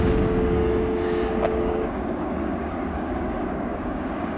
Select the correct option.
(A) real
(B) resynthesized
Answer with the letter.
B